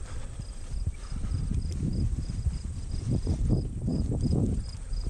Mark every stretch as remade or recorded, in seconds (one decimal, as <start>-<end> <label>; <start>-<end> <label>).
0.0-5.1 recorded